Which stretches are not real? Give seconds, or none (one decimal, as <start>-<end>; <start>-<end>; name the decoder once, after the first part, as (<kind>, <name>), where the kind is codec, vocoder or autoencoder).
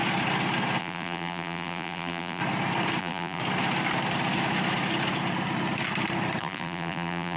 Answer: 0.8-2.4 (vocoder, BigVGAN v2); 3.0-3.4; 6.4-7.4